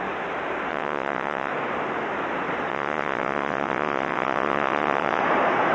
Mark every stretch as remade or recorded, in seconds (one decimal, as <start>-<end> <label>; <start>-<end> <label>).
0.0-0.7 recorded; 0.7-1.5 remade; 1.5-2.7 recorded; 2.7-5.2 remade; 5.2-5.7 recorded